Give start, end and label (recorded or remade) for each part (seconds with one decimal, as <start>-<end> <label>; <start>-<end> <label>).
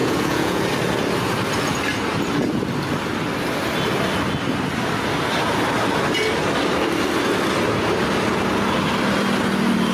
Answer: 0.0-0.6 remade; 0.6-9.9 recorded